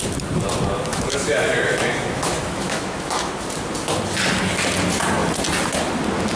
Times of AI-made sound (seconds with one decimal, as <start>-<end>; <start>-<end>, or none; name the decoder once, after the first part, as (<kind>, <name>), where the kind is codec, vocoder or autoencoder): 0.9-3.3 (autoencoder, DAC-VAE)